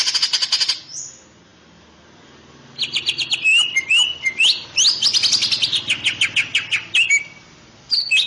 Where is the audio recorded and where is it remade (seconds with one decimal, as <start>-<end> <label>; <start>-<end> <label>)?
0.0-8.3 recorded